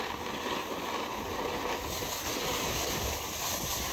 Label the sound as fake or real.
real